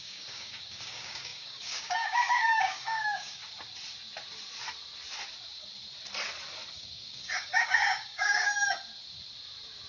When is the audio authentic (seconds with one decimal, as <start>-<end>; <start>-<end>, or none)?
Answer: 3.4-6.7; 8.5-9.9